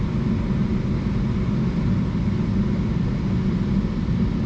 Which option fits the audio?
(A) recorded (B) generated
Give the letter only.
A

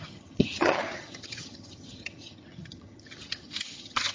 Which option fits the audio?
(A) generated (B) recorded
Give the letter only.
A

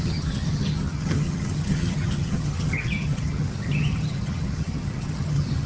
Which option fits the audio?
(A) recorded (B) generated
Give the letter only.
B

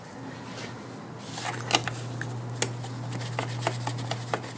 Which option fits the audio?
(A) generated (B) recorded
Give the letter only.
B